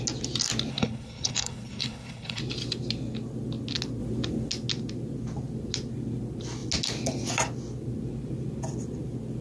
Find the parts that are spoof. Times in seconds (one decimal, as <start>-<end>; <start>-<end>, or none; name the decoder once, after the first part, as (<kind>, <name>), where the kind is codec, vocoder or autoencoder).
0.7-2.4 (codec, HILCodec)